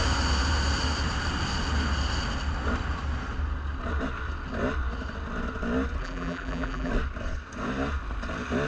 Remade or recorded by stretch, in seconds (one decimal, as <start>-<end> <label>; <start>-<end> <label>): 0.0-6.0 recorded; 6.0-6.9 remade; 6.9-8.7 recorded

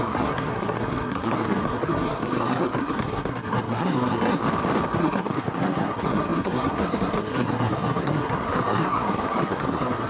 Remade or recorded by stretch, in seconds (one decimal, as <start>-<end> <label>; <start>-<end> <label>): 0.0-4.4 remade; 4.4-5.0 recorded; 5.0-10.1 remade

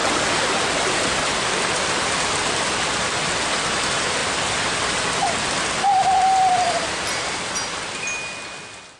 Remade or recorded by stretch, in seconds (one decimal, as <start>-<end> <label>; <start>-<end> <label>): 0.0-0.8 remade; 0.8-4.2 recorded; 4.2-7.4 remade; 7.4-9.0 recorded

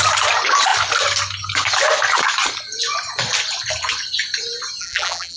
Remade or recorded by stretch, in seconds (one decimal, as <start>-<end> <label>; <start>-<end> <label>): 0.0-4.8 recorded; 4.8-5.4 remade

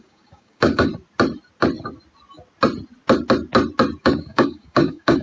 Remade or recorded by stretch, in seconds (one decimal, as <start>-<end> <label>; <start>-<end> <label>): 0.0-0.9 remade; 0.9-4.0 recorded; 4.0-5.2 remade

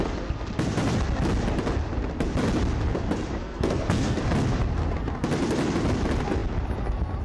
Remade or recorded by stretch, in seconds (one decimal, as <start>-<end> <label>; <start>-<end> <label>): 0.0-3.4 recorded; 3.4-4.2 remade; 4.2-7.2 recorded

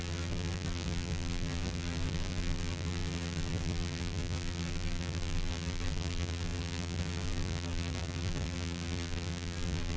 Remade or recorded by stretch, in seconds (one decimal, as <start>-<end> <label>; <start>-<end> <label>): 0.0-10.0 remade